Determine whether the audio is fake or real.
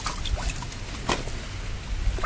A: real